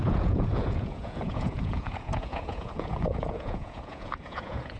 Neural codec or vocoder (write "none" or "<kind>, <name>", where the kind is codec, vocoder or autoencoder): vocoder, Vocos